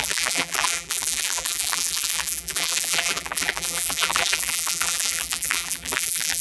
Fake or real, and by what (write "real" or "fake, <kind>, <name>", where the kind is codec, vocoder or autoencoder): fake, vocoder, BigVGAN v2